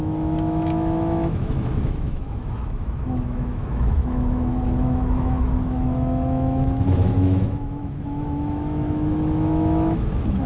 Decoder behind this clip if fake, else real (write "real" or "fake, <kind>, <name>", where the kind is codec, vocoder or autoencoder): fake, autoencoder, DAC-VAE